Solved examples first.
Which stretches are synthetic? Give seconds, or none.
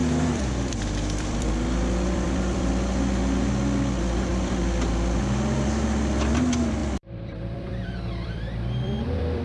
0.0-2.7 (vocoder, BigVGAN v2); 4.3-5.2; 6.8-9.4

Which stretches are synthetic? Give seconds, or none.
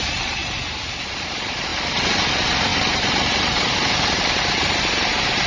0.0-0.4 (vocoder, BigVGAN v2); 1.0-1.7; 2.2-5.5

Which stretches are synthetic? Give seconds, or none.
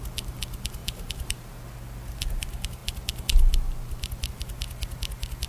0.8-1.5 (vocoder, BigVGAN v2)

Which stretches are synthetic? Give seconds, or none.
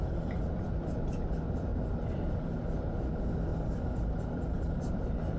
0.0-0.6 (vocoder, BigVGAN v2); 1.7-2.3; 3.5-5.0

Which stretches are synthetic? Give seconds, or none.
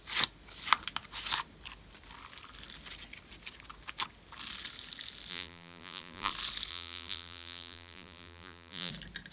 5.3-6.3 (vocoder, BigVGAN v2); 6.7-8.9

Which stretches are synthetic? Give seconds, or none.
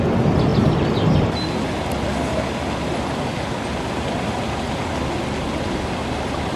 none